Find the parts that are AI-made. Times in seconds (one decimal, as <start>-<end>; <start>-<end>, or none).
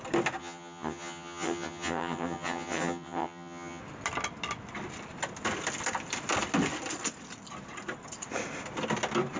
0.4-3.8